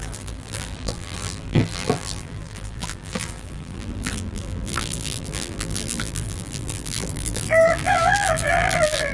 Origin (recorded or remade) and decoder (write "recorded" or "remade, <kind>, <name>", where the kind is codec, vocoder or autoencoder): remade, vocoder, BigVGAN v2